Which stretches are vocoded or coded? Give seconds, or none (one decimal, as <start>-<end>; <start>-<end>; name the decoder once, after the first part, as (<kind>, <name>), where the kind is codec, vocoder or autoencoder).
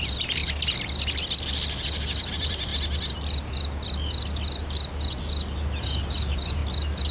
0.0-0.4 (vocoder, BigVGAN v2); 2.3-2.7; 5.8-6.6